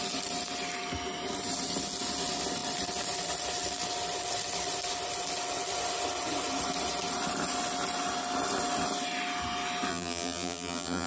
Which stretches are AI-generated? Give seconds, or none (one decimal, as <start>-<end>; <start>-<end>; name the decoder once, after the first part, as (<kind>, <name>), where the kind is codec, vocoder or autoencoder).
9.9-11.1 (vocoder, BigVGAN v2)